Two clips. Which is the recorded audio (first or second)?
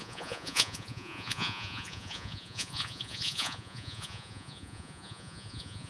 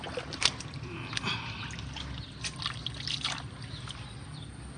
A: second